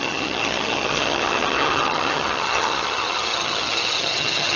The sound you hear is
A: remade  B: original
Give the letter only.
A